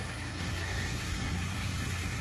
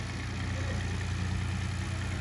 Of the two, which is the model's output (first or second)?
first